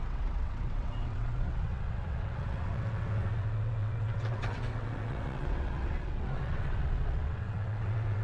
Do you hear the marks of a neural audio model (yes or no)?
yes